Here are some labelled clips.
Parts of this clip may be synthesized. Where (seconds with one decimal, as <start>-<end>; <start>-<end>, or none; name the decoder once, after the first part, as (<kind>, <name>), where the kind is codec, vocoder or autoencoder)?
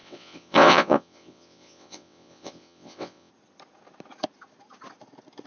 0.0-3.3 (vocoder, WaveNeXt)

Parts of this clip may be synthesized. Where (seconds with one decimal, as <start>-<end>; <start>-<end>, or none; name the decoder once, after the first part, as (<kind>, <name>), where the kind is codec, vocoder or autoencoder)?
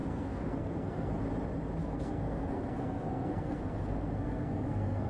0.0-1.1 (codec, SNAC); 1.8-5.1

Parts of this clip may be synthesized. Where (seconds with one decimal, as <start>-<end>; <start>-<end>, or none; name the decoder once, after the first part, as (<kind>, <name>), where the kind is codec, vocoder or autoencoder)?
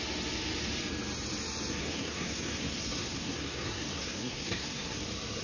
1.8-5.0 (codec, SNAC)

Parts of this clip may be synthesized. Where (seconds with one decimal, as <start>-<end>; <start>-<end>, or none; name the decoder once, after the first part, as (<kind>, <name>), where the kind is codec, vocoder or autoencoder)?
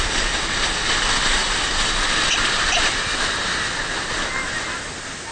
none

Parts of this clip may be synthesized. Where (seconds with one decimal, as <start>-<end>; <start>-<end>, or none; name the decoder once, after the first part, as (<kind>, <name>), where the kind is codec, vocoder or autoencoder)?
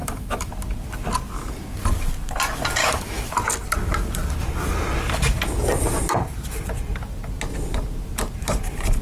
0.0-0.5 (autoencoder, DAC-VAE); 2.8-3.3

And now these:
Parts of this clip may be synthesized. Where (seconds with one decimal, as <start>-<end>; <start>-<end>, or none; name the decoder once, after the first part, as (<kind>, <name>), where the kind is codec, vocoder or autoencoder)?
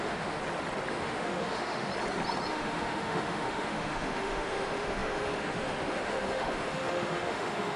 0.0-0.4 (autoencoder, DAC-VAE); 0.9-1.9; 2.5-7.8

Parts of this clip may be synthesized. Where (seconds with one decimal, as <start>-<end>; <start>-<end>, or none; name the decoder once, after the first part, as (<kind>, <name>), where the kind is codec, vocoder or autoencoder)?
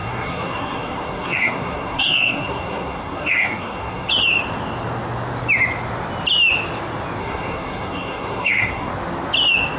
0.0-4.1 (codec, SNAC); 7.2-8.9